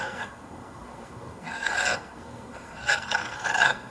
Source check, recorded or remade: remade